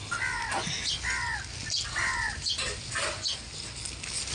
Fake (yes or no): no